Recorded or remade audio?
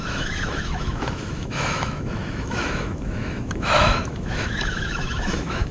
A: remade